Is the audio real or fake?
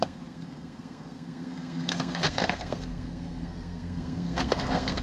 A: fake